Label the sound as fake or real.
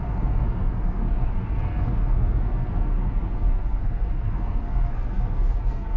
fake